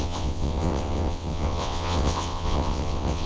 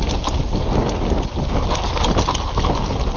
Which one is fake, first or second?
first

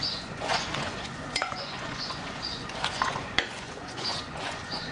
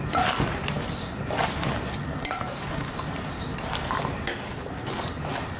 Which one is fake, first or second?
first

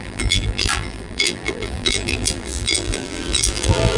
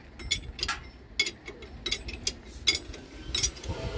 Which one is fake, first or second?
first